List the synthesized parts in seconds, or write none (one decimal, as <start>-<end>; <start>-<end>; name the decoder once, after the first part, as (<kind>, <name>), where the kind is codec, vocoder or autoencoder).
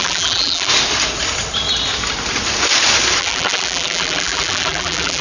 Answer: 0.0-0.7 (vocoder, BigVGAN v2); 3.2-5.2